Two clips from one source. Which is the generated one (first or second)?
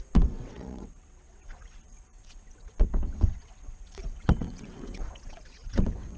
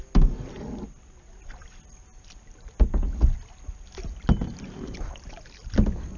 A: first